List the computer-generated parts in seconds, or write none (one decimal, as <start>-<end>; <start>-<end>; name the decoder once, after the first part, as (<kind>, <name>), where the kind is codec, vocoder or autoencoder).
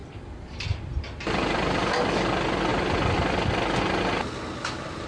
0.0-1.9 (vocoder, BigVGAN v2)